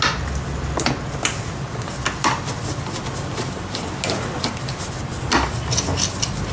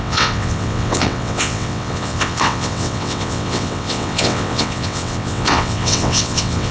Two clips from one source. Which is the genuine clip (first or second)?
first